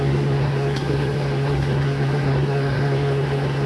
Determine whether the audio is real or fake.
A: fake